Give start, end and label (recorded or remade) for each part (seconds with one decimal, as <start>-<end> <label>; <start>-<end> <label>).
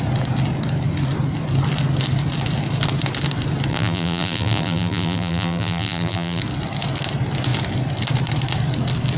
0.0-3.7 recorded; 3.7-6.4 remade; 6.4-9.2 recorded